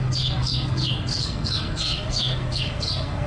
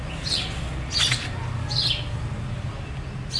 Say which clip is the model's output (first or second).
first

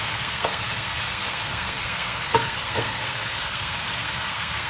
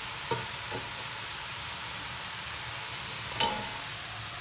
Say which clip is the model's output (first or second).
first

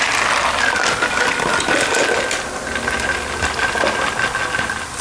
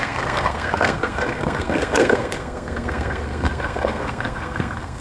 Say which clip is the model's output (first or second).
second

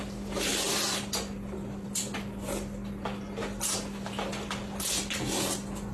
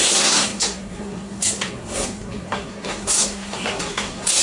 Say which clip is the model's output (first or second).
second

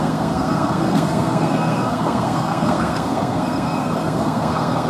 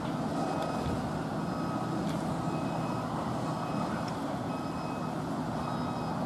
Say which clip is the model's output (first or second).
first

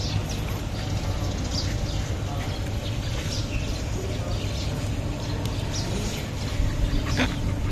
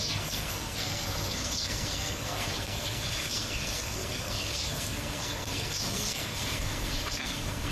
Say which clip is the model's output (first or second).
second